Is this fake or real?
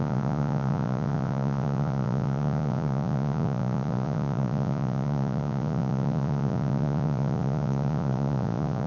fake